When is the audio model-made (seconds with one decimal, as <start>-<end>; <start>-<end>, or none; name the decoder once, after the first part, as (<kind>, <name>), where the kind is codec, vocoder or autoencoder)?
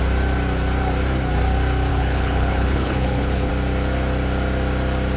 1.9-3.5 (codec, HILCodec)